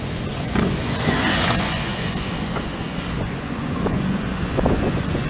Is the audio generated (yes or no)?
yes